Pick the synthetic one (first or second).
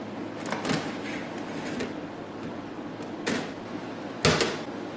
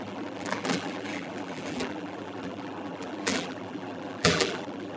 second